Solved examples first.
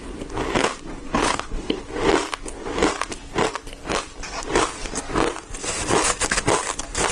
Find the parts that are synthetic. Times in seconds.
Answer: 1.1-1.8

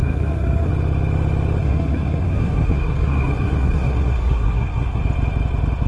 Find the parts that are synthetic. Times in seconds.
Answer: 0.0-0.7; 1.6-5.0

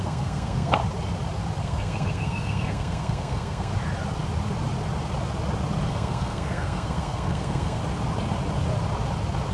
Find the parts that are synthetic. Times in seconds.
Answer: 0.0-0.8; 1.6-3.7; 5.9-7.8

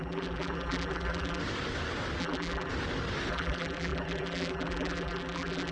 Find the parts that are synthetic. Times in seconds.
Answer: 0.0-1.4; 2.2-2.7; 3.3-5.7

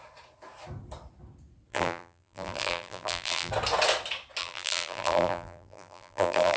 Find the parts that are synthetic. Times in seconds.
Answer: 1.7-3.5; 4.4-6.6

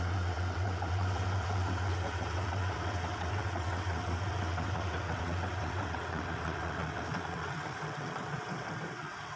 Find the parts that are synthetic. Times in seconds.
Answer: 0.0-9.4